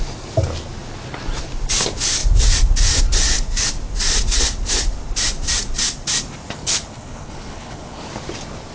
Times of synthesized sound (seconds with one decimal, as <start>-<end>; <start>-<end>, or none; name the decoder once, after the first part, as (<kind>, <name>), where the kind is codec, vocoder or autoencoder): 6.6-8.1 (codec, HILCodec)